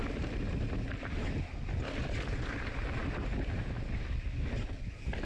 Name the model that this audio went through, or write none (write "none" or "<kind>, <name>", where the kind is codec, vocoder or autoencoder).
none